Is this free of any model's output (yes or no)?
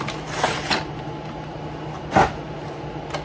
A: yes